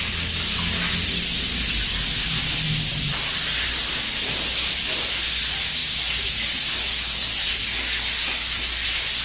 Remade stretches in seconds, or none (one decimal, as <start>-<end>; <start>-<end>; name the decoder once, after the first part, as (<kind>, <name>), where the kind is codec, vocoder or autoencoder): none